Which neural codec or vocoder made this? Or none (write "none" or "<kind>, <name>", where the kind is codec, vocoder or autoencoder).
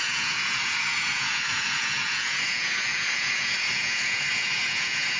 vocoder, Vocos